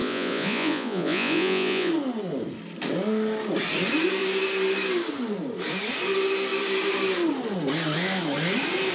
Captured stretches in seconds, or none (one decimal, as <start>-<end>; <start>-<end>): 1.9-8.9